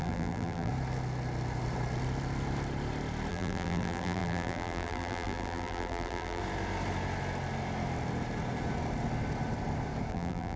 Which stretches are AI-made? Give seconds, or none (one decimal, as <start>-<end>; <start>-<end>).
0.0-0.7; 3.3-6.4; 10.1-10.6